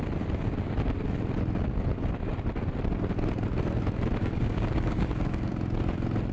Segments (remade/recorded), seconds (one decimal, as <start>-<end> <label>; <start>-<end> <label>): 0.0-4.2 recorded; 4.2-5.5 remade; 5.5-6.3 recorded